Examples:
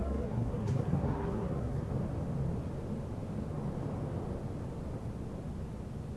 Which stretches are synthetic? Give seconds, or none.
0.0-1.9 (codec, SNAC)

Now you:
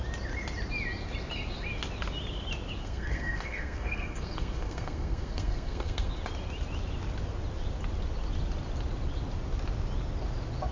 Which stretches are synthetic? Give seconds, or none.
2.8-6.1 (codec, SNAC)

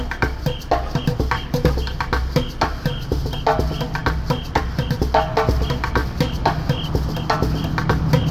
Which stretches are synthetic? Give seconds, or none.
none

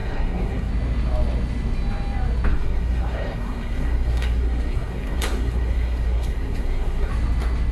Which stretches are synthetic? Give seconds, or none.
0.0-0.7 (codec, SNAC); 2.5-7.1